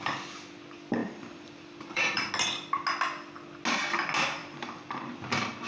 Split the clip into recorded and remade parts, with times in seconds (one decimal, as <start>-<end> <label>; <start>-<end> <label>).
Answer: 0.0-1.0 recorded; 1.0-2.3 remade; 2.3-4.4 recorded; 4.4-5.1 remade; 5.1-5.7 recorded